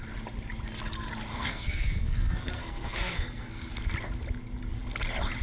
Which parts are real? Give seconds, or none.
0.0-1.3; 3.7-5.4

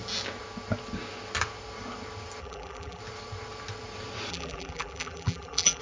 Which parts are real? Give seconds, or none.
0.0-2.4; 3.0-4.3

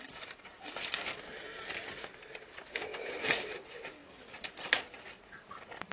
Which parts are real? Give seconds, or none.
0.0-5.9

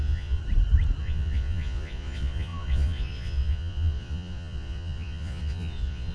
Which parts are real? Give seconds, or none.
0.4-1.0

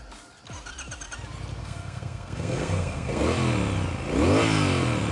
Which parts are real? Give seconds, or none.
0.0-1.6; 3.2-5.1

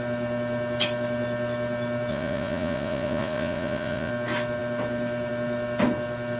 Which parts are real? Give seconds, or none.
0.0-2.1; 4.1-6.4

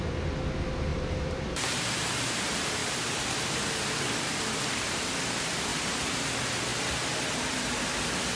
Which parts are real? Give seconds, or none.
0.0-0.9; 2.4-2.8; 4.3-5.7; 6.3-8.4

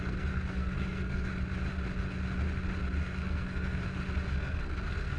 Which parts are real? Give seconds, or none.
1.3-3.0; 3.8-4.3